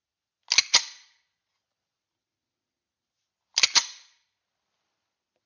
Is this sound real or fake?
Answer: real